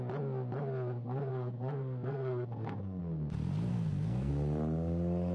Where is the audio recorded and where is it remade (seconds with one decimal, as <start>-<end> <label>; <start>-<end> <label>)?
0.0-1.3 recorded; 1.3-3.0 remade; 3.0-3.7 recorded; 3.7-4.3 remade; 4.3-5.3 recorded

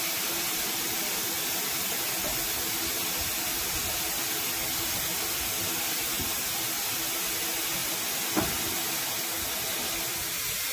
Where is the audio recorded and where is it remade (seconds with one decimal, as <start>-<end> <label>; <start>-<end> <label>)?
0.0-10.7 recorded

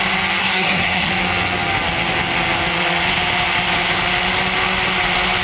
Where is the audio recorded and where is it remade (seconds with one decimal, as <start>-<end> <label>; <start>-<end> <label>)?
0.0-0.4 recorded; 0.4-1.1 remade; 1.1-5.4 recorded

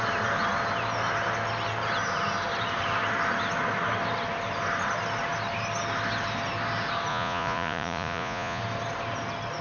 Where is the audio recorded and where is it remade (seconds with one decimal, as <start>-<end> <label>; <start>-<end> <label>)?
0.0-7.1 recorded; 7.1-8.6 remade; 8.6-9.6 recorded

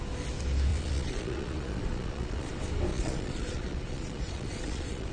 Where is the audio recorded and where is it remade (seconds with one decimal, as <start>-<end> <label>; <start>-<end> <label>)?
0.0-0.7 recorded; 0.7-2.5 remade; 2.5-2.9 recorded; 2.9-5.1 remade

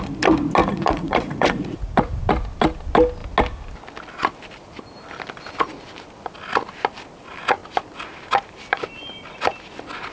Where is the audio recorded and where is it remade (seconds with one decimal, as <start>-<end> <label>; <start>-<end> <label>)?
0.0-0.6 recorded; 0.6-2.2 remade; 2.2-10.1 recorded